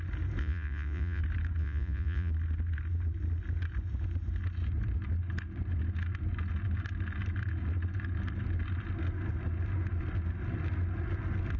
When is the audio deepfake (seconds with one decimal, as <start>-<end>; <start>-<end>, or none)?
0.4-1.2; 1.6-2.3